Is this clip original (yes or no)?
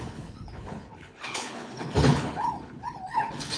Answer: no